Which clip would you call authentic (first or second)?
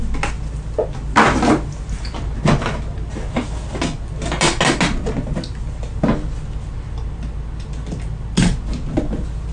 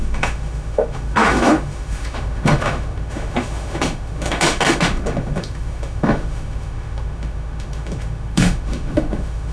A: first